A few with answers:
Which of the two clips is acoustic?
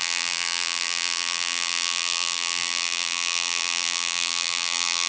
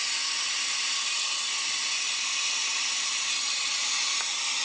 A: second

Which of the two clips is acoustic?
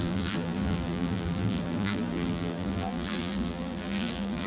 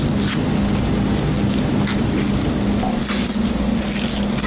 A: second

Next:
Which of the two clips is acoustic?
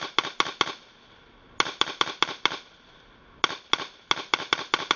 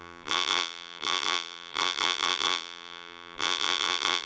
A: first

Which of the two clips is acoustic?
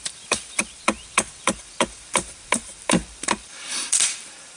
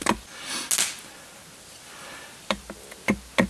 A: second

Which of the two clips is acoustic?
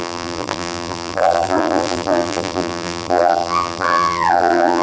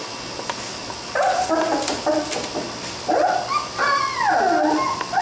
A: second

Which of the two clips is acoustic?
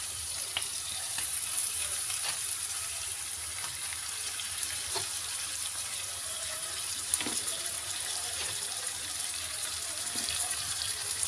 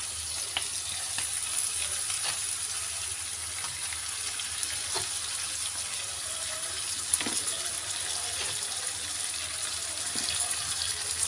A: second